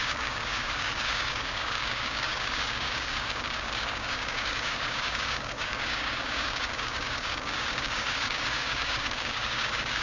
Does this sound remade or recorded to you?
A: remade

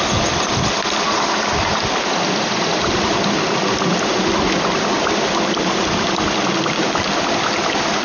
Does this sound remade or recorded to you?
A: recorded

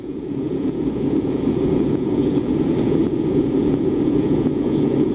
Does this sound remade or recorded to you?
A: remade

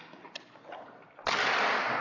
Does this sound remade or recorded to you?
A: recorded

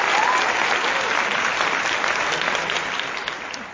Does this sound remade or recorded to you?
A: recorded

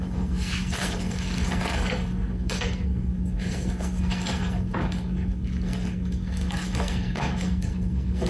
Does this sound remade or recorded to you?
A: remade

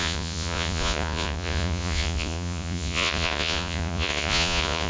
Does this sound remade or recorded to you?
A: remade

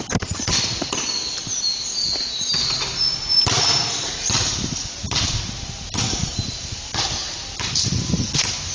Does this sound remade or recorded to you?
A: recorded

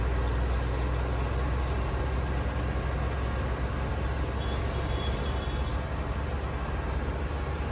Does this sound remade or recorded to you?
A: recorded